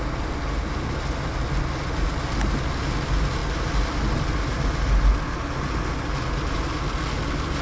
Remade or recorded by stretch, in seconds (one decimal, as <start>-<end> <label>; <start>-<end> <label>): 0.0-7.6 recorded